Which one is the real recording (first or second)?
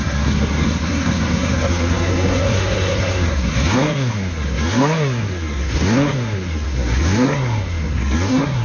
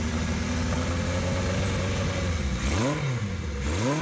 second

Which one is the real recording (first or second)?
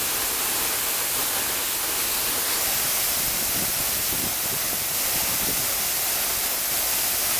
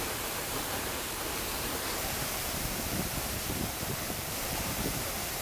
first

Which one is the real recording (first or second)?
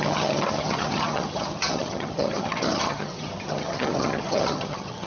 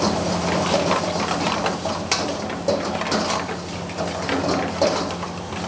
second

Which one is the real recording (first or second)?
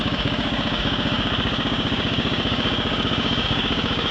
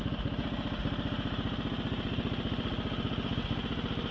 second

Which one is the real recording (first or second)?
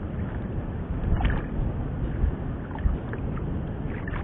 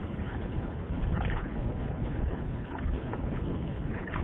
first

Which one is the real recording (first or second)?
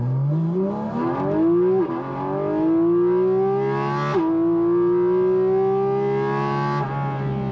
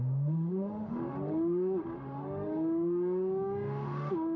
first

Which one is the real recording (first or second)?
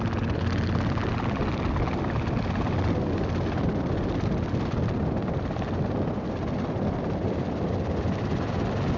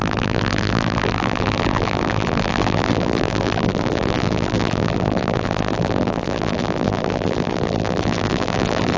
first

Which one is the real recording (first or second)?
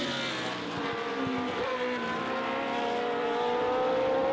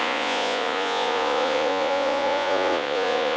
first